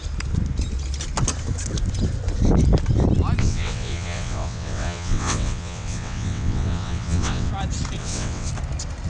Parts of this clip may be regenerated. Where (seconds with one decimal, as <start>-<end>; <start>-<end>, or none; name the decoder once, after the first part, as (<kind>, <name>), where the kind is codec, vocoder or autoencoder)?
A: 3.4-7.5 (vocoder, WaveNeXt); 8.0-8.5